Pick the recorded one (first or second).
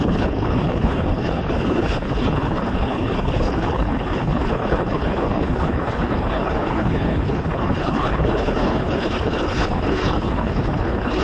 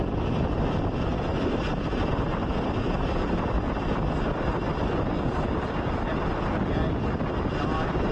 second